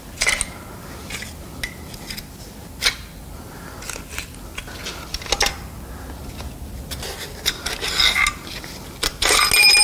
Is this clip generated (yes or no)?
no